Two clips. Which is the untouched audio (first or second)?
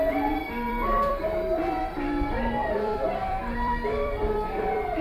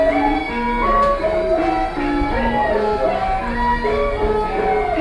second